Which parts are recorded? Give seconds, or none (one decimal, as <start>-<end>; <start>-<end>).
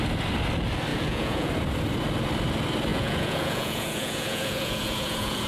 0.0-0.9; 1.5-2.9